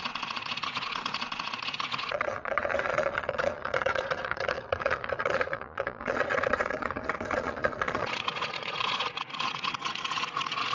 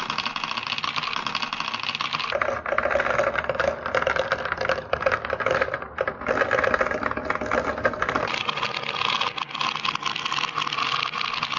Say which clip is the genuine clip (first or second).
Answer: second